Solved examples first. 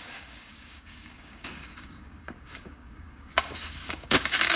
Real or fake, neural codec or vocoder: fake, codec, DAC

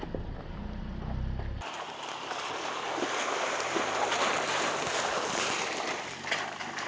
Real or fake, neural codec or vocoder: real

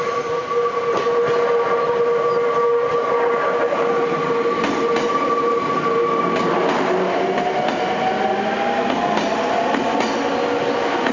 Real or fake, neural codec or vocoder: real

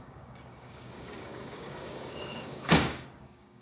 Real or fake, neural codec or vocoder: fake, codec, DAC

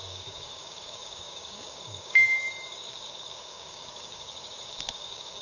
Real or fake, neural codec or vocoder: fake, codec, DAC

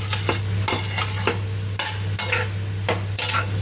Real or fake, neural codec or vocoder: real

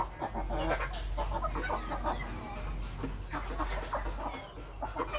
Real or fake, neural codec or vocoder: real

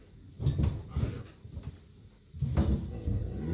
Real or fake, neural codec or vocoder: real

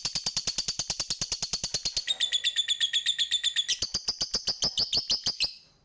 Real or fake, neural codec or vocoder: real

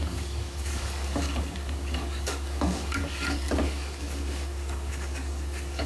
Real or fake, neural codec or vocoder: fake, codec, DAC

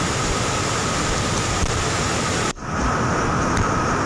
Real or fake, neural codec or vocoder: real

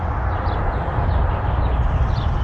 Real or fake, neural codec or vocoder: real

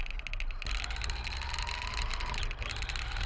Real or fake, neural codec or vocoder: real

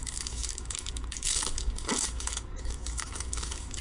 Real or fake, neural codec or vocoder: fake, codec, DAC